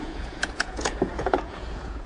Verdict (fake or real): fake